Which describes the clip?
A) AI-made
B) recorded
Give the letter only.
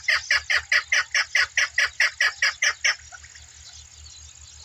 B